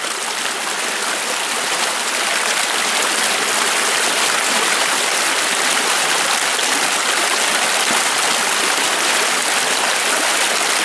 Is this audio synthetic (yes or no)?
no